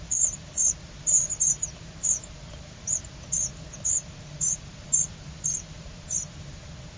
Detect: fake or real fake